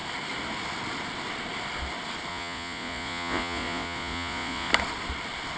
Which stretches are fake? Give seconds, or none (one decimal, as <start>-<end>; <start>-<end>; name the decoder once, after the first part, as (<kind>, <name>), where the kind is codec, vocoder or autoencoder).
2.3-4.7 (vocoder, Vocos)